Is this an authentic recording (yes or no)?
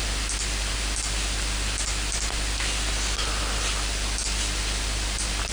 yes